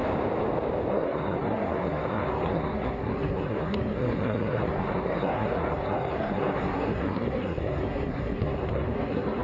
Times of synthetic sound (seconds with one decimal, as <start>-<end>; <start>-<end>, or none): 0.9-9.4